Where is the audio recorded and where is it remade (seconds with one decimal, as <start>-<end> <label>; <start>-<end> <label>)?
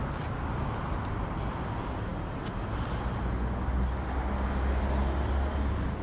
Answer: 0.0-6.0 recorded